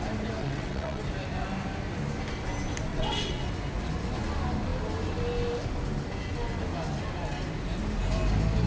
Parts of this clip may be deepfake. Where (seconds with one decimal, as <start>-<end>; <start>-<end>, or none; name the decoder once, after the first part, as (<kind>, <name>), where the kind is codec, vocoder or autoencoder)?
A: 0.4-1.0 (vocoder, WaveNeXt); 2.9-3.5